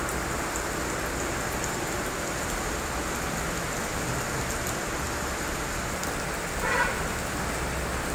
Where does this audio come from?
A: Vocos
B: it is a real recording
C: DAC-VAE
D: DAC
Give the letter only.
B